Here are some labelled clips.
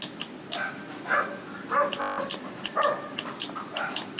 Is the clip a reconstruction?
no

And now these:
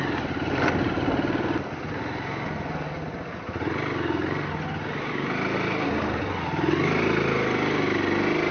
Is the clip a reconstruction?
no